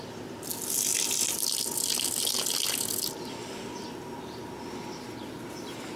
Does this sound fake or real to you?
real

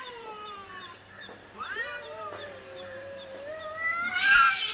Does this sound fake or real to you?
fake